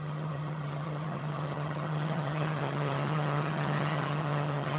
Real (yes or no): no